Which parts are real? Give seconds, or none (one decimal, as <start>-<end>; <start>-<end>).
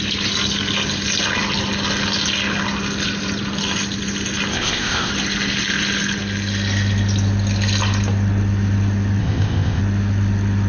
0.0-4.5; 5.1-9.2; 9.8-10.7